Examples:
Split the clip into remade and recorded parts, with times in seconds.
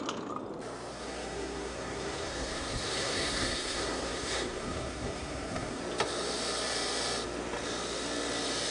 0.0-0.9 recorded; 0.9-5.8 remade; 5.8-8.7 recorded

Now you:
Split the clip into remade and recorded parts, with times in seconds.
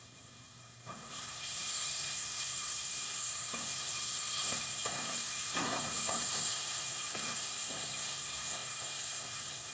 0.0-9.7 remade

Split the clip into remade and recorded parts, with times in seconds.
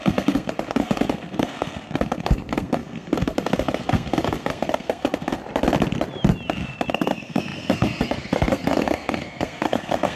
0.0-5.4 remade; 5.4-6.9 recorded; 6.9-10.2 remade